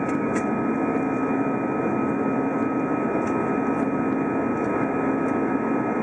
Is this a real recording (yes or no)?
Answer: yes